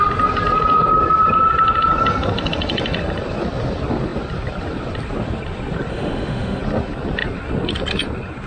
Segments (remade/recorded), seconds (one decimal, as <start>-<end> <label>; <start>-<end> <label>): 0.0-5.9 recorded; 5.9-6.6 remade; 6.6-8.5 recorded

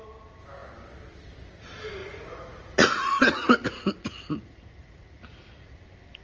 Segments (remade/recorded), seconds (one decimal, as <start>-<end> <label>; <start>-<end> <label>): 0.0-2.0 recorded; 2.0-5.7 remade; 5.7-6.2 recorded

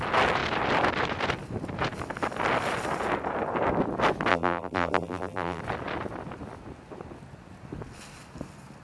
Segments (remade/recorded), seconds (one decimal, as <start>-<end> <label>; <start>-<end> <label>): 0.0-4.3 recorded; 4.3-5.6 remade; 5.6-8.8 recorded

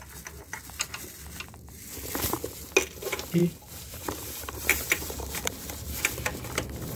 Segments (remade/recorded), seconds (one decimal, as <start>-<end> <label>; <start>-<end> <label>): 0.0-3.4 recorded; 3.4-5.5 remade; 5.5-7.0 recorded

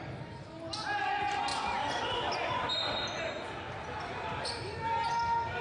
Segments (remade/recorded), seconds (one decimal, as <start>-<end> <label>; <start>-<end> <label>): 0.0-5.6 recorded

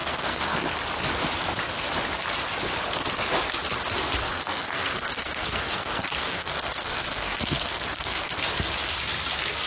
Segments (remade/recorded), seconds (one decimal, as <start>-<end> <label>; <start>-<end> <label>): 0.0-0.7 remade; 0.7-4.2 recorded; 4.2-8.3 remade; 8.3-9.7 recorded

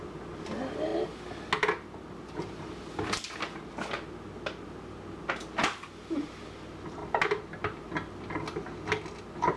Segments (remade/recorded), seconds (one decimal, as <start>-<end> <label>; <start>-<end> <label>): 0.0-9.6 recorded

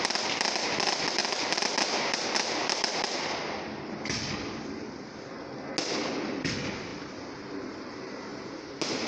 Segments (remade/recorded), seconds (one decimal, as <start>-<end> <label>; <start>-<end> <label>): 0.0-1.2 recorded; 1.2-5.7 remade; 5.7-9.1 recorded